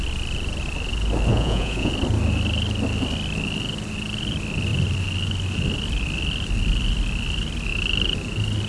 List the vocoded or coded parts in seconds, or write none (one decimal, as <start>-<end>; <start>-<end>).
1.3-1.9